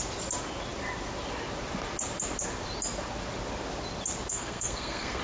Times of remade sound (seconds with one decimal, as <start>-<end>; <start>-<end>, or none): 4.3-5.2